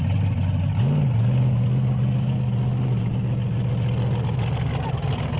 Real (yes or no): yes